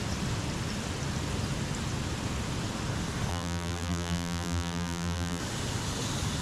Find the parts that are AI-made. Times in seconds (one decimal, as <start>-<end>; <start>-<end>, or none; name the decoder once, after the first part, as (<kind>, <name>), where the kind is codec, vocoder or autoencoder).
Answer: 3.3-5.4 (vocoder, BigVGAN v2)